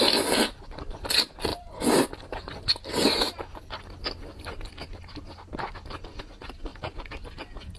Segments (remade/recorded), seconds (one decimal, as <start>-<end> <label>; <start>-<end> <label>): 0.0-7.8 recorded